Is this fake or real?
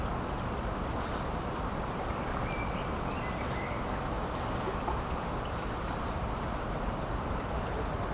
real